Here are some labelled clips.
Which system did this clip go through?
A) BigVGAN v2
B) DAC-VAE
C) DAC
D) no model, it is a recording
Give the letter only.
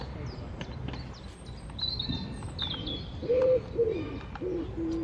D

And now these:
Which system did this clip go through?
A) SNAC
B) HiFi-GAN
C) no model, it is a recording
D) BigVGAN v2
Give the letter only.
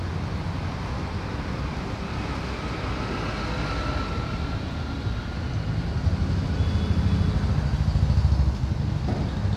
C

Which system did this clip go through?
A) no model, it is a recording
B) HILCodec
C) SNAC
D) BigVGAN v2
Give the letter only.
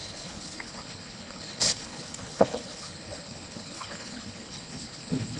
B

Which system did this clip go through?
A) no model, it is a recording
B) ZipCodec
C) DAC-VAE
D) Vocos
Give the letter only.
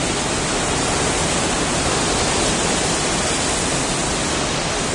A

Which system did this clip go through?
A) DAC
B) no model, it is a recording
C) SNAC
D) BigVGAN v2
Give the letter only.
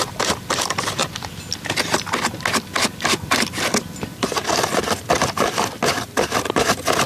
B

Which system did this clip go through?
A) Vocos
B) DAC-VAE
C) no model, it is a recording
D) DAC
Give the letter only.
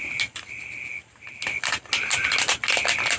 C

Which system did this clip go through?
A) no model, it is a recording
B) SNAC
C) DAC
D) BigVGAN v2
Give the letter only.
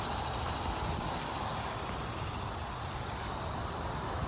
A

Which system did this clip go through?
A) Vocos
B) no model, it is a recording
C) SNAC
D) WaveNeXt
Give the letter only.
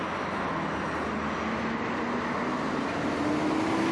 B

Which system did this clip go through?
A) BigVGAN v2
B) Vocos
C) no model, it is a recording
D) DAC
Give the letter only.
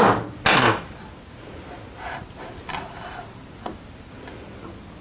C